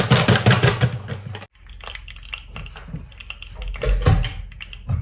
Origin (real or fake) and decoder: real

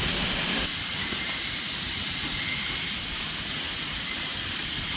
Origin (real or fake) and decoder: real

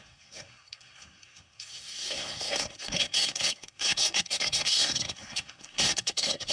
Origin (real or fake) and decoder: fake, codec, SNAC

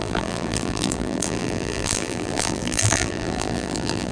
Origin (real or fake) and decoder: fake, vocoder, BigVGAN v2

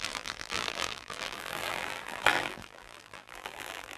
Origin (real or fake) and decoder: fake, vocoder, BigVGAN v2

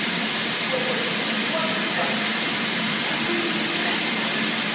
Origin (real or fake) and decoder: real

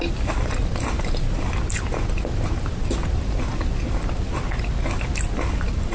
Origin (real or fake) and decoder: real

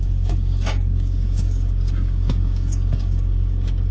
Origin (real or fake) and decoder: fake, codec, DAC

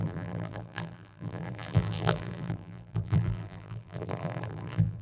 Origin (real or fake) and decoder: fake, vocoder, BigVGAN v2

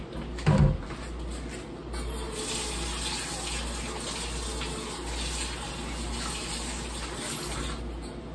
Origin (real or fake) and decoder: real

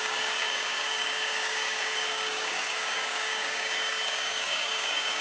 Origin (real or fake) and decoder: fake, codec, DAC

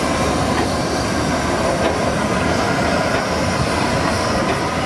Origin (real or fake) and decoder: real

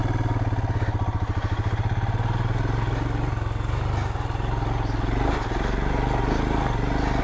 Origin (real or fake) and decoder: real